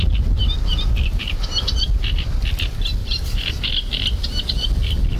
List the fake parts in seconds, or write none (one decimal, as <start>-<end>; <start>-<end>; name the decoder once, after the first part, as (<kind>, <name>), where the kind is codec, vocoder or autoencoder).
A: 3.0-3.5 (vocoder, BigVGAN v2)